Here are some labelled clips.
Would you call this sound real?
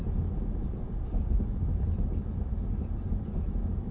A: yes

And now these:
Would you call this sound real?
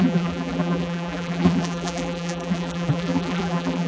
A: no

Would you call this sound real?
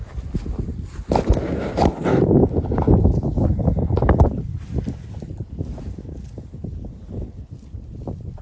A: yes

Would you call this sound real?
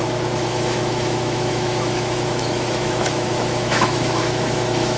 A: no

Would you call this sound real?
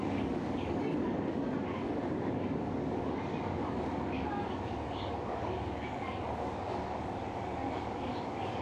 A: no